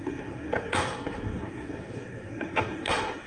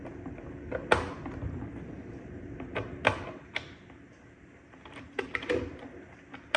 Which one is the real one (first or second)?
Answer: second